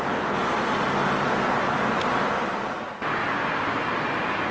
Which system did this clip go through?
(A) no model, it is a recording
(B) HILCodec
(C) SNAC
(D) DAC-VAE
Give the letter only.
A